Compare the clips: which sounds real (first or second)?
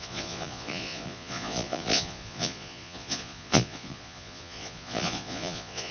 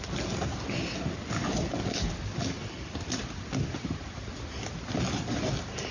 second